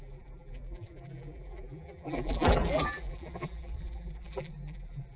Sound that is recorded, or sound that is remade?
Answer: remade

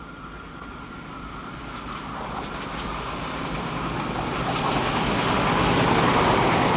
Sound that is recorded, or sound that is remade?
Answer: recorded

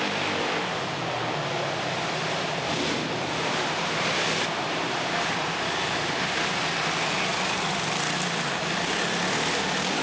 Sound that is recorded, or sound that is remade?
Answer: recorded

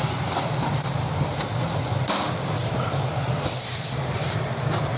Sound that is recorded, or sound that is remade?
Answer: remade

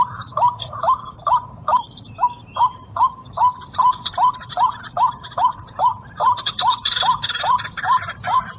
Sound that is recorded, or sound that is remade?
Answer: remade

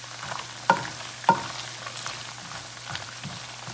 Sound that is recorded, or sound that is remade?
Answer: recorded